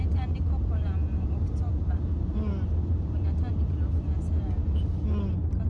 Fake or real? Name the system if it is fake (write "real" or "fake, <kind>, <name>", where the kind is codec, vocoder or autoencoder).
real